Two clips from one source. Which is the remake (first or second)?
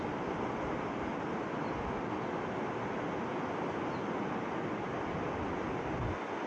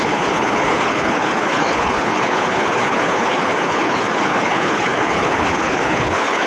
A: second